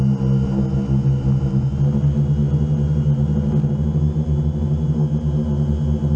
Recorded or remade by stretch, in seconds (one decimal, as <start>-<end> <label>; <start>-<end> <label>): 0.0-6.2 recorded